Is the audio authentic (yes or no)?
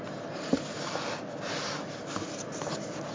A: yes